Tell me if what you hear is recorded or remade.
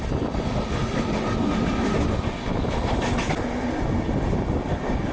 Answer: recorded